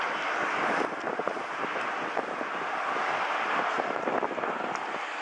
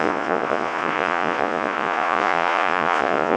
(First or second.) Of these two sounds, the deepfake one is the second